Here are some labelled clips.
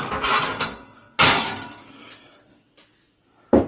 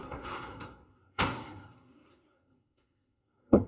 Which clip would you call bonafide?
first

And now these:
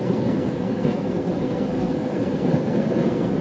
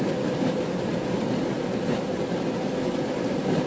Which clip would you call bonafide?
second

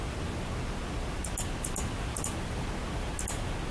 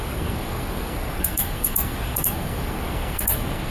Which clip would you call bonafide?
first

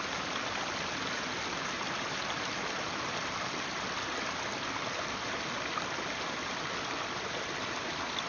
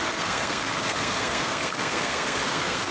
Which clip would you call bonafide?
first